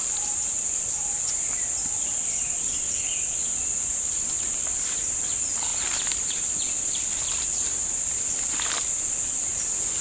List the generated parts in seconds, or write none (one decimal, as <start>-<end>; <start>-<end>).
0.0-10.0